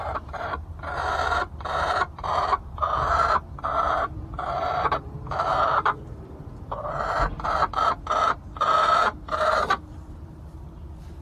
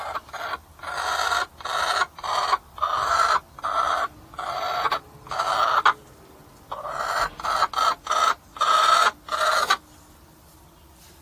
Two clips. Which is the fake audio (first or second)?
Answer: first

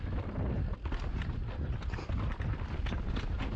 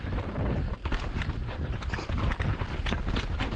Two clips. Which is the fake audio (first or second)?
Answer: second